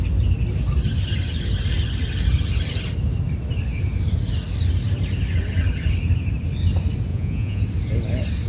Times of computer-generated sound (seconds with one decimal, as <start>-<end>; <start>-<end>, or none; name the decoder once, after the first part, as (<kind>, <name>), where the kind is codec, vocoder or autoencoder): 7.1-7.6 (vocoder, Vocos)

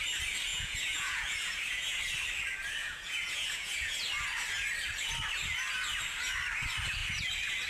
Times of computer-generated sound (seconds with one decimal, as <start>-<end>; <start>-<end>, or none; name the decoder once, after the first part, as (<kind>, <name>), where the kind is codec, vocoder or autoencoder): 0.5-2.0 (vocoder, Vocos); 2.8-4.0

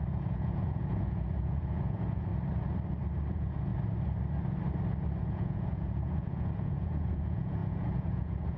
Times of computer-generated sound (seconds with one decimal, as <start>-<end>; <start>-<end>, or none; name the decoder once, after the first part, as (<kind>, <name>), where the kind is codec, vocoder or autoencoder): 0.0-2.3 (vocoder, Vocos); 3.3-3.7; 5.2-8.6

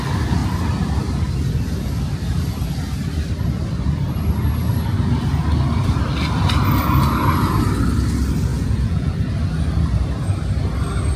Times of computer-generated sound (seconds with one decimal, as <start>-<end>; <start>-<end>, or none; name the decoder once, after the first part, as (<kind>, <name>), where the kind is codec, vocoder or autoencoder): 8.5-9.1 (vocoder, Vocos)

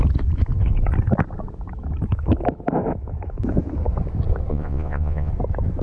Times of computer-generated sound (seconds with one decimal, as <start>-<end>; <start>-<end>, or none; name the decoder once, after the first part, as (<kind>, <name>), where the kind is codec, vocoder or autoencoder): 4.5-5.3 (vocoder, Vocos)

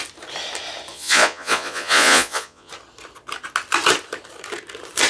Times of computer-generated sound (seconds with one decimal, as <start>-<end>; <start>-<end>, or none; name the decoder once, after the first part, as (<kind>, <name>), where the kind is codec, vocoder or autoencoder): 0.9-2.7 (vocoder, Vocos)

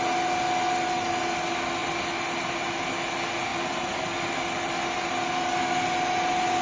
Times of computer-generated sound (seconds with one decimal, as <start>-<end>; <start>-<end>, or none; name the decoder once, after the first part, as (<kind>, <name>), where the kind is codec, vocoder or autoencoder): none

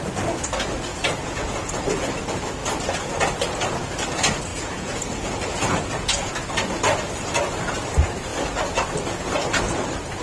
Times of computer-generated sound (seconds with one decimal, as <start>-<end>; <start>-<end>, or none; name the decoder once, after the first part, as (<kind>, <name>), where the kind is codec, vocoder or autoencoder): 0.9-1.8 (vocoder, Vocos); 4.5-6.3